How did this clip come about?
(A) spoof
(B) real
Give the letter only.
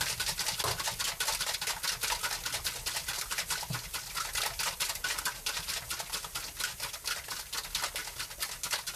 B